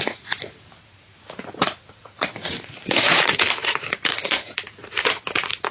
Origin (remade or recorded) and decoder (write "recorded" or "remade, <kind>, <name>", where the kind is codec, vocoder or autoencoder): remade, vocoder, Vocos